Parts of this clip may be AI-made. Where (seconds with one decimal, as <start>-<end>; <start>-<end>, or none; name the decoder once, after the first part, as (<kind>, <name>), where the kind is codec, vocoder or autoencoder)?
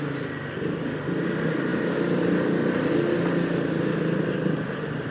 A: none